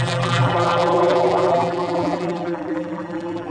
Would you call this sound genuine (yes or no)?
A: no